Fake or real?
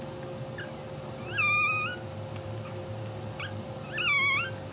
real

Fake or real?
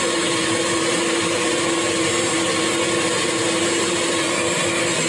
real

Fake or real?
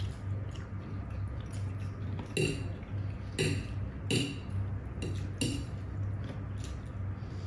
real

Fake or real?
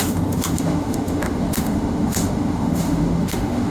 fake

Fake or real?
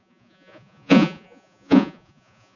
fake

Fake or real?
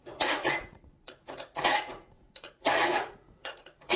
fake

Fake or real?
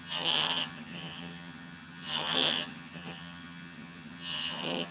fake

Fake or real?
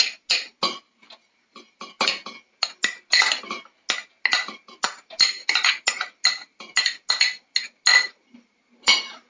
real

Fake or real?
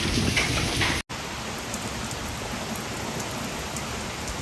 real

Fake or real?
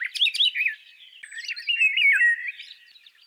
real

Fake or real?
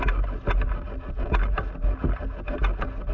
real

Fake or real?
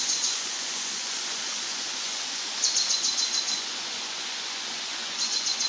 fake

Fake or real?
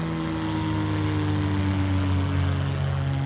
real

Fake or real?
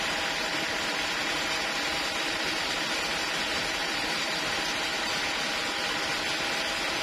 real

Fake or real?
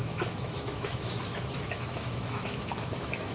fake